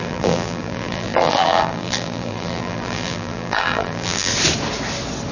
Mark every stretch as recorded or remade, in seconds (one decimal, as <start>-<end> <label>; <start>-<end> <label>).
0.0-4.3 remade; 4.3-5.3 recorded